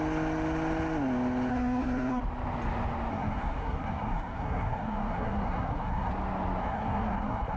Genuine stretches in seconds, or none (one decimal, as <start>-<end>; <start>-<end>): 0.0-1.5; 2.2-3.1; 6.1-6.6